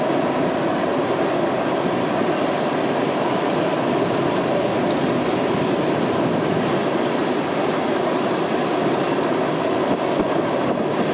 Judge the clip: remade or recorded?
recorded